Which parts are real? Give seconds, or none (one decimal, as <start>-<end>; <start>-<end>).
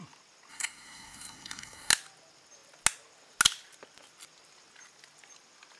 0.0-0.5; 1.9-5.8